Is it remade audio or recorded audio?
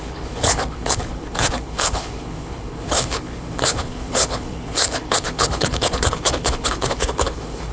remade